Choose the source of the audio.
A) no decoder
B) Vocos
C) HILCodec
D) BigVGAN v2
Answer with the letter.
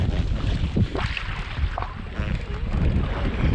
A